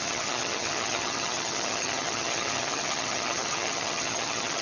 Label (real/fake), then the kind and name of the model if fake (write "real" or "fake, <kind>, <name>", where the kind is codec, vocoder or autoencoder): fake, vocoder, HiFi-GAN